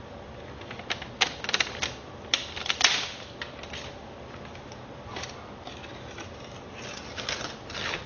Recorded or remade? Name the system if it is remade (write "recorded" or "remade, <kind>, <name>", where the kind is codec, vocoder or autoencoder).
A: recorded